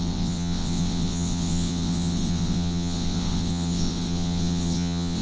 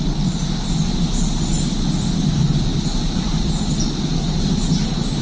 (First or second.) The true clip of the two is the second